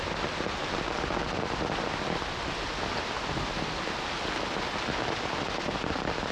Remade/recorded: recorded